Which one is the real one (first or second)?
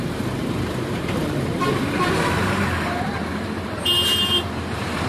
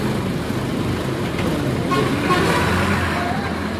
second